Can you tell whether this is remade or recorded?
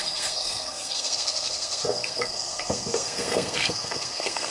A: remade